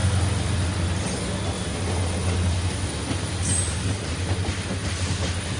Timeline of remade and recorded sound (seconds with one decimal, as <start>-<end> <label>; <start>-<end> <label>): 0.0-5.6 recorded